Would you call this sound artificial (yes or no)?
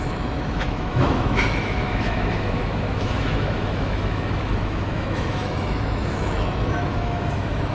yes